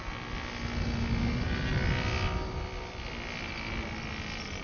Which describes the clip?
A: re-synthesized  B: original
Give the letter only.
B